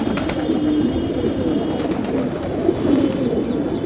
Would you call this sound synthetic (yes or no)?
no